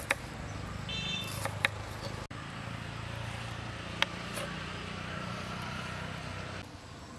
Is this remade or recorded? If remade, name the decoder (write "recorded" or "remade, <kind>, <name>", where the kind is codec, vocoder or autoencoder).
recorded